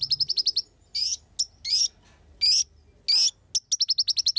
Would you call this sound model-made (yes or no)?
no